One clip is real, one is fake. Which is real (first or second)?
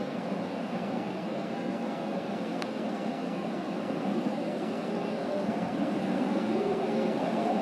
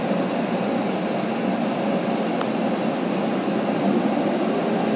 second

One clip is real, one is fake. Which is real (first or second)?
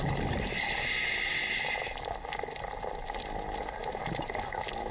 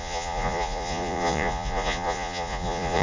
first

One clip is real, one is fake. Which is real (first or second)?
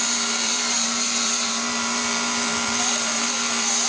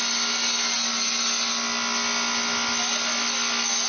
second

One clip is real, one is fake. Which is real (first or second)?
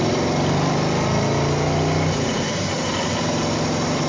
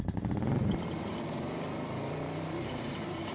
first